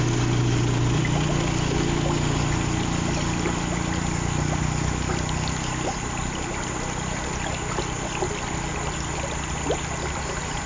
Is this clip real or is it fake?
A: real